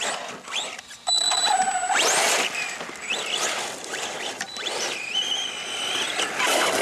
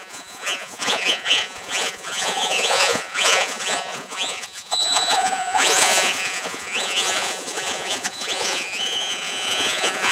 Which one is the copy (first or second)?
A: second